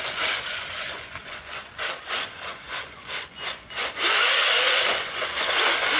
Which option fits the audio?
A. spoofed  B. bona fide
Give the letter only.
A